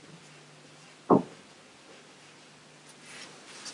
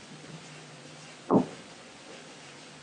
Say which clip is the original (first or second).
first